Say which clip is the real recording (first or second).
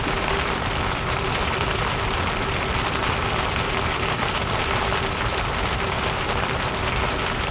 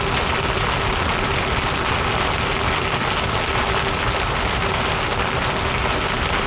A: second